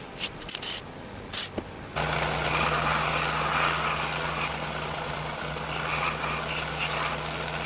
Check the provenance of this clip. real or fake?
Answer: real